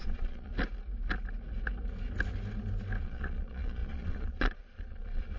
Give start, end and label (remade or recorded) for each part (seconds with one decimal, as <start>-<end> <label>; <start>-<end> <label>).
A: 0.0-0.5 remade; 0.5-3.0 recorded; 3.0-5.4 remade